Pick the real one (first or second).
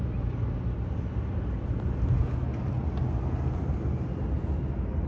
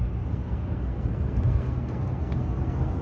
first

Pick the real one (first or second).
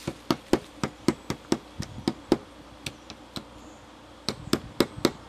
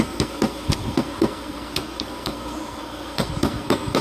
first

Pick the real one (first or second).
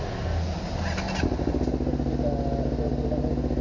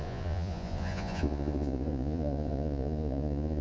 first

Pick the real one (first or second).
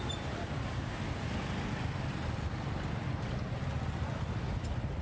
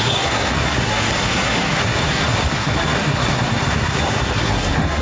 first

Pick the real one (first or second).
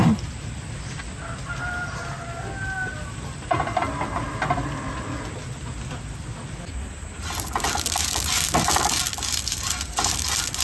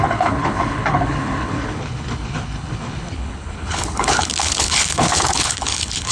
first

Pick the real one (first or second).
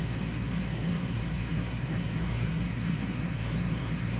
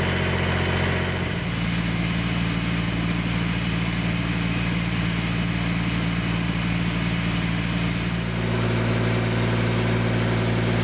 second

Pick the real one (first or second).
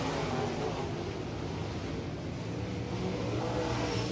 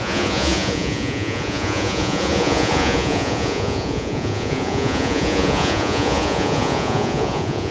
first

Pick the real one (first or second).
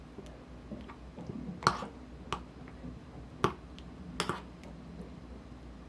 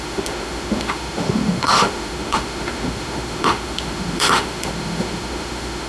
first